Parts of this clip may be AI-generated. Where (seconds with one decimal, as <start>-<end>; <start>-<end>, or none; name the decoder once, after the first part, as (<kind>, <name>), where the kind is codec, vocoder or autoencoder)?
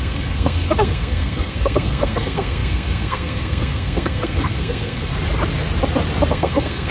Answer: 0.0-5.1 (codec, SNAC); 6.3-6.9